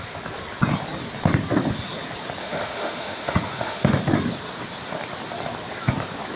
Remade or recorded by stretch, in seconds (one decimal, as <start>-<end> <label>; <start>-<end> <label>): 0.0-2.4 recorded; 2.4-4.0 remade; 4.0-6.4 recorded